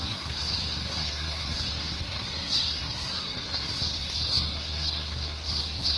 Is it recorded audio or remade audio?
remade